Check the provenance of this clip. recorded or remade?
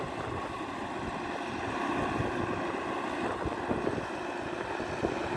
recorded